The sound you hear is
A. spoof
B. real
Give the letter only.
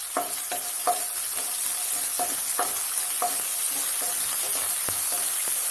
B